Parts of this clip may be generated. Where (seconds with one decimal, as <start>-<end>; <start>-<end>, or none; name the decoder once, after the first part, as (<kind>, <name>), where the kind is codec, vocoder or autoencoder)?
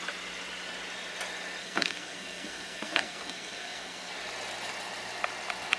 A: 1.6-4.1 (codec, SNAC)